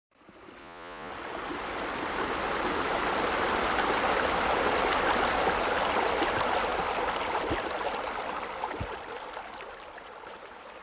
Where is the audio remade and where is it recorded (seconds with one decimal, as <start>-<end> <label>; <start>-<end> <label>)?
0.0-0.6 recorded; 0.6-1.1 remade; 1.1-10.8 recorded